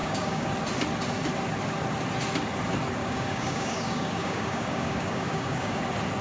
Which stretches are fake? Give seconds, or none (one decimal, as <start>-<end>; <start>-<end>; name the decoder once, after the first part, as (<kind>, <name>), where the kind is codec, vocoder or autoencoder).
0.0-0.5 (codec, DAC); 3.0-5.8

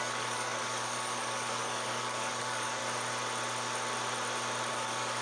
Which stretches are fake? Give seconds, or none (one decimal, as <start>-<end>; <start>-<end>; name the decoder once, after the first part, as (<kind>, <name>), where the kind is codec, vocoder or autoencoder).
0.0-2.8 (codec, DAC); 4.7-5.2

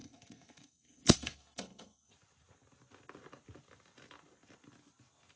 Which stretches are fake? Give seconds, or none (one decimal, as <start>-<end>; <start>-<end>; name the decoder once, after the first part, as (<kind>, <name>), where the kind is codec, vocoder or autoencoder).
0.0-2.1 (codec, SNAC)

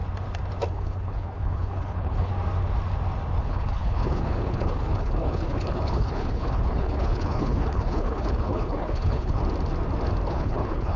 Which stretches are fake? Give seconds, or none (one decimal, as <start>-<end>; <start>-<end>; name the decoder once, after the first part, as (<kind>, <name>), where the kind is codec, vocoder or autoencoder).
0.7-2.3 (codec, HILCodec); 3.4-9.4; 10.3-11.0

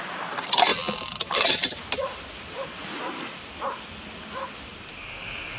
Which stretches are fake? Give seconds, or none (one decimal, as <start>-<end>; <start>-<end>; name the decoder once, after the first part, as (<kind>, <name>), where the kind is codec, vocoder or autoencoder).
none